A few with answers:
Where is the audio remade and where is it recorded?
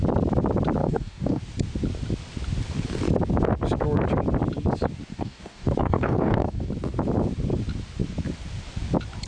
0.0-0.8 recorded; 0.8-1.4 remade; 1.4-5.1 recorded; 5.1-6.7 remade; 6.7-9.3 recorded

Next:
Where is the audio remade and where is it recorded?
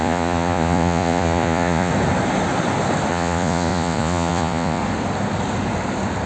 0.0-1.9 remade; 1.9-3.1 recorded; 3.1-4.8 remade; 4.8-6.3 recorded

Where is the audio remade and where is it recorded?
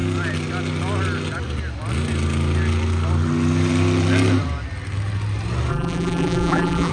0.0-5.7 recorded; 5.7-6.9 remade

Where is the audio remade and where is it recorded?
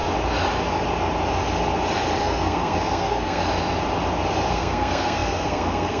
0.0-2.2 recorded; 2.2-3.4 remade; 3.4-4.5 recorded; 4.5-6.0 remade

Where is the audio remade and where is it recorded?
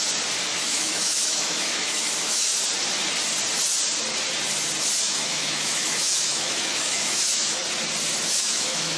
0.0-0.5 recorded; 0.5-2.5 remade; 2.5-5.0 recorded; 5.0-7.6 remade; 7.6-8.3 recorded; 8.3-9.0 remade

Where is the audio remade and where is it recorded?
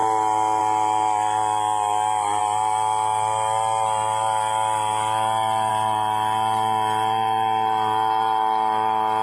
0.0-9.2 recorded